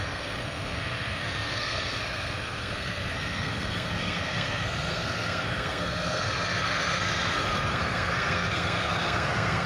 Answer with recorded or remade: remade